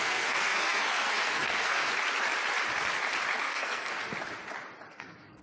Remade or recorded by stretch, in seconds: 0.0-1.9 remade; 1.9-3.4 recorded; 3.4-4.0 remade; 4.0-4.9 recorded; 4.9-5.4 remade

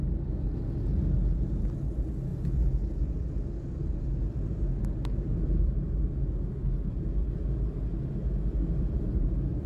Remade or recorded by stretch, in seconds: 0.0-9.7 recorded

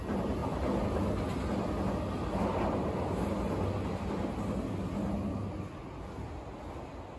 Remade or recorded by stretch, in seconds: 0.0-7.2 recorded

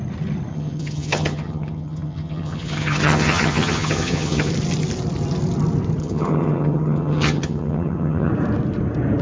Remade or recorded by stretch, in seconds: 0.0-0.5 recorded; 0.5-4.5 remade; 4.5-6.0 recorded; 6.0-8.3 remade; 8.3-9.2 recorded

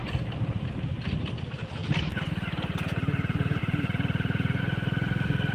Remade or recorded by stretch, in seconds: 0.0-0.8 remade; 0.8-3.6 recorded; 3.6-4.6 remade; 4.6-5.5 recorded

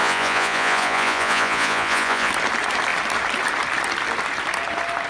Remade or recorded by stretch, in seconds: 0.0-2.3 remade; 2.3-5.1 recorded

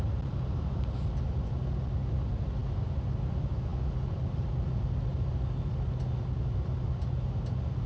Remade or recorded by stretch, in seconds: 0.0-7.9 recorded

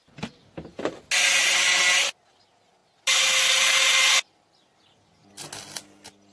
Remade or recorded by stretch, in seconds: 0.0-6.3 recorded